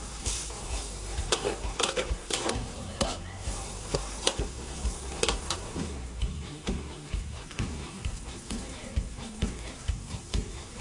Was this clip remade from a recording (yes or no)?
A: yes